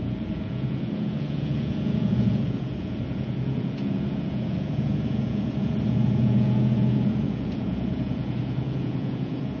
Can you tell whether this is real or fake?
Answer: fake